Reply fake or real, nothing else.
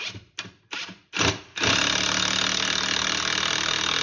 real